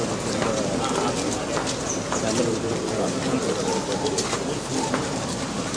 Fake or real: real